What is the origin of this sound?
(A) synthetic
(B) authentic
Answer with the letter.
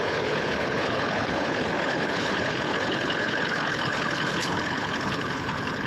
A